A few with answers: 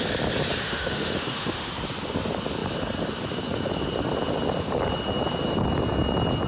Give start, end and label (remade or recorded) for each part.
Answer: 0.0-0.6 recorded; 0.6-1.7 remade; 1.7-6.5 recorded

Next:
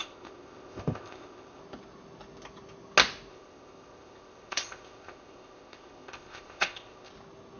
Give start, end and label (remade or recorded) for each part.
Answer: 0.0-1.6 remade; 1.6-3.3 recorded; 3.3-7.1 remade; 7.1-7.6 recorded